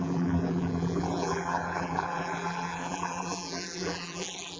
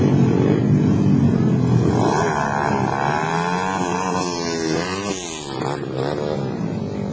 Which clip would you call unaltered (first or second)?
second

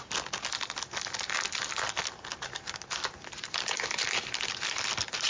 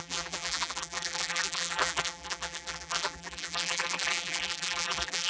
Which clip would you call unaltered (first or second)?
first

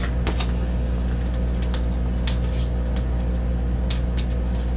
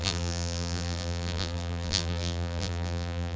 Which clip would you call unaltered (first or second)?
first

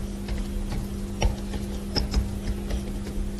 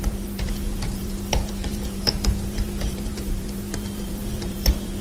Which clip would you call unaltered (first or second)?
first